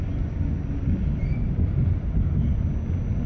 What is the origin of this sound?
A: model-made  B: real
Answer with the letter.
B